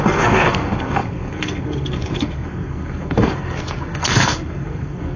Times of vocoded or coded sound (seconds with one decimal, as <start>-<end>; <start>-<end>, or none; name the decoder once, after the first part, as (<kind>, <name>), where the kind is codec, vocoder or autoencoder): 0.0-5.2 (codec, SNAC)